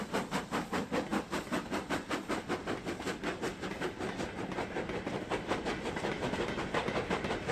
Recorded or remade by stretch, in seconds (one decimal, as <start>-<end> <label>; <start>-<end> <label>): 0.0-7.5 recorded